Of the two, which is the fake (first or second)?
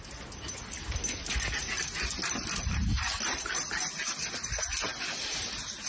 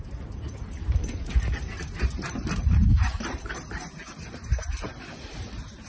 second